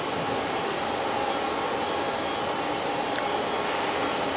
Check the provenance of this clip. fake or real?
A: real